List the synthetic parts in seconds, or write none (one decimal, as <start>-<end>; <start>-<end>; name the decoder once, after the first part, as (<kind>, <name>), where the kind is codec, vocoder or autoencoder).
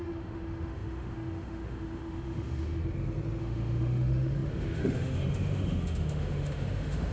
0.0-2.8 (autoencoder, DAC-VAE); 3.4-7.1